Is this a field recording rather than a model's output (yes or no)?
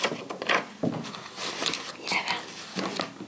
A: yes